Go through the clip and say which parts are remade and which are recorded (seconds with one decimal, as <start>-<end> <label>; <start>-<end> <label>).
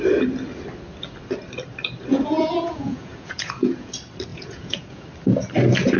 0.0-2.1 recorded; 2.1-3.9 remade; 3.9-4.3 recorded; 4.3-5.0 remade; 5.0-6.0 recorded